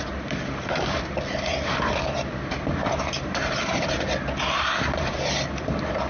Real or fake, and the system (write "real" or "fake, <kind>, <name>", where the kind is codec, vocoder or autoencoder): fake, vocoder, BigVGAN v2